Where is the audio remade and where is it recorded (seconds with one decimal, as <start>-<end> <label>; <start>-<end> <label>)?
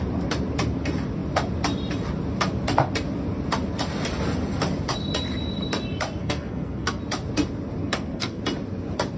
0.0-6.2 recorded; 6.2-7.0 remade; 7.0-7.8 recorded; 7.8-8.4 remade; 8.4-9.2 recorded